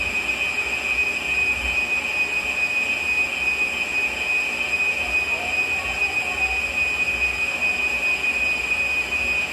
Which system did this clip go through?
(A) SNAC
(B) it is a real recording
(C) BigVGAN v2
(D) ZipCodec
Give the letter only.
B